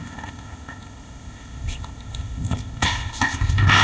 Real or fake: fake